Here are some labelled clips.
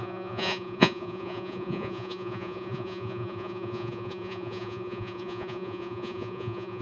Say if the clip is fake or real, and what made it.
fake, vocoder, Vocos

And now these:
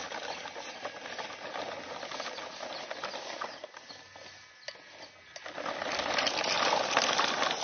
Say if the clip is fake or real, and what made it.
real